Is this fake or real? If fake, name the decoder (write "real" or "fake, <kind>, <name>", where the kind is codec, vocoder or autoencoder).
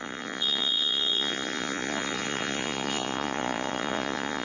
fake, vocoder, Vocos